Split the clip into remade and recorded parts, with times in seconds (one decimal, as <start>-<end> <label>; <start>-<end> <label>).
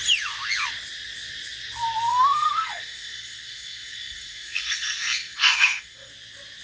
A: 0.0-2.1 recorded; 2.1-6.1 remade; 6.1-6.6 recorded